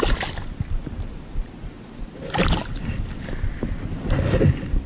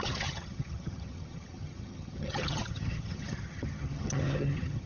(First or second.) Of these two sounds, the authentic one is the first